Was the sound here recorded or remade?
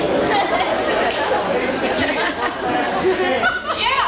recorded